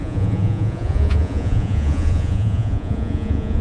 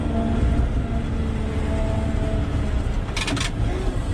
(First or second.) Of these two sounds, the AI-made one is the first